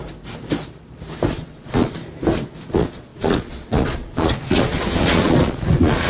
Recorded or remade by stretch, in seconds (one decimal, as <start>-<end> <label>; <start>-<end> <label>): 0.0-1.3 recorded; 1.3-2.0 remade; 2.0-2.7 recorded; 2.7-6.1 remade